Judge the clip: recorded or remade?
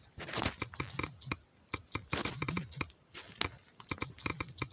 recorded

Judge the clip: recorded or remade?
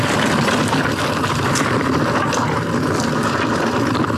recorded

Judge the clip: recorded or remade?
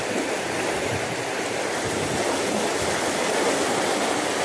recorded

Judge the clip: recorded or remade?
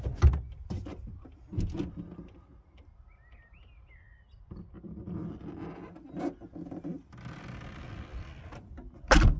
recorded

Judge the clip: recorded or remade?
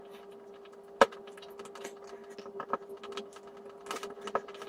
recorded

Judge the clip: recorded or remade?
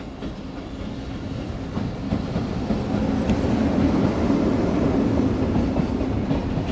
recorded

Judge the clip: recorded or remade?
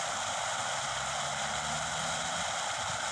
recorded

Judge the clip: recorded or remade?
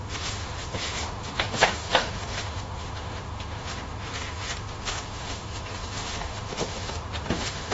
remade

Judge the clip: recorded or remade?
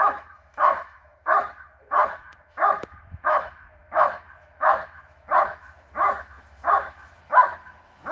remade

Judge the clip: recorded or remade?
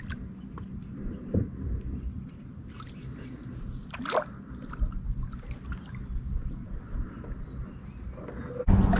recorded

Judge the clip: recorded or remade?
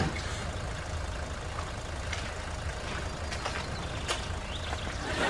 recorded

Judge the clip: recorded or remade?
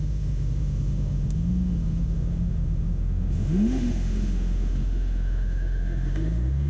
remade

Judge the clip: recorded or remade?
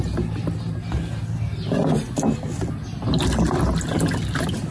recorded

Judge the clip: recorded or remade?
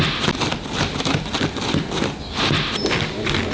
recorded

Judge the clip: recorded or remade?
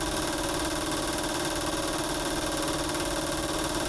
recorded